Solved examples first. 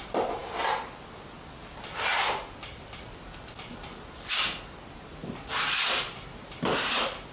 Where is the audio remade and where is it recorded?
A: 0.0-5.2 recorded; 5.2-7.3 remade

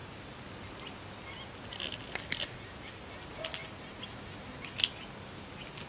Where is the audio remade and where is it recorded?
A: 0.0-5.9 recorded

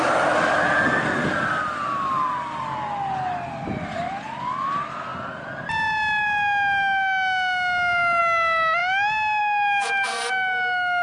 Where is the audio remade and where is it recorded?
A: 0.0-11.0 recorded

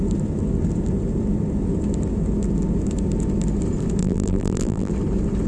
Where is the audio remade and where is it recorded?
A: 0.0-4.0 recorded; 4.0-4.9 remade; 4.9-5.5 recorded

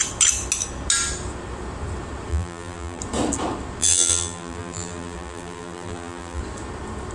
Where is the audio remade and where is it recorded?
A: 0.0-2.3 recorded; 2.3-3.0 remade; 3.0-3.8 recorded; 3.8-6.4 remade; 6.4-7.1 recorded

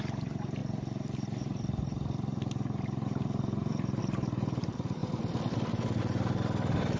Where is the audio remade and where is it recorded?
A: 0.0-7.0 remade

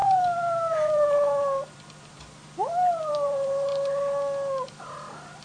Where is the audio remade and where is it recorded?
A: 0.0-3.7 remade; 3.7-4.8 recorded; 4.8-5.4 remade